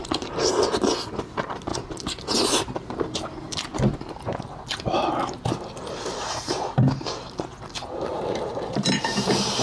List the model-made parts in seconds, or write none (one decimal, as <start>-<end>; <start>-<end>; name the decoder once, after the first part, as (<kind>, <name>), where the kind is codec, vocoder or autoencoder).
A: 8.1-9.6 (vocoder, BigVGAN v2)